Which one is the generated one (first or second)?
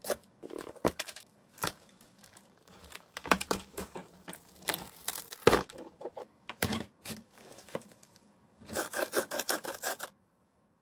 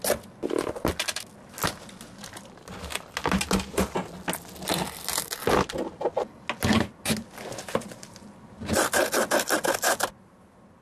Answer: first